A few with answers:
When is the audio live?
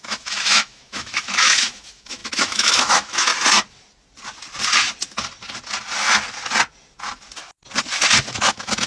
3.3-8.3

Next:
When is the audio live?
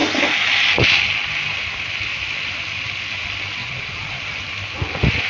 0.0-3.6; 4.2-5.3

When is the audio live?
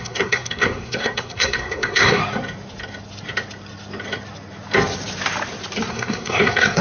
2.2-5.9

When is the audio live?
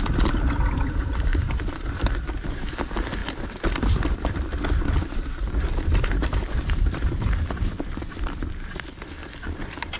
0.0-1.3; 1.9-3.2; 8.5-10.0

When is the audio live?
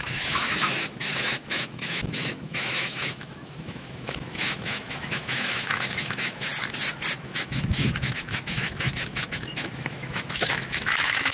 6.5-7.2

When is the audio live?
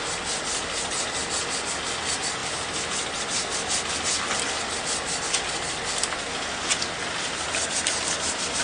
0.0-8.6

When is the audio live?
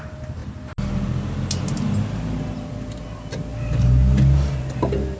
0.0-5.2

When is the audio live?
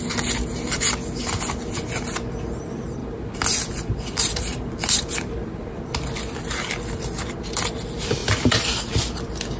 0.0-3.0; 5.8-9.6